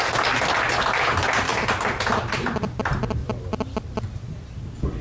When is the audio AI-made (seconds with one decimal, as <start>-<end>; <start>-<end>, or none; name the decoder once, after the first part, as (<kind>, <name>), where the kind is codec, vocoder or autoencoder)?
none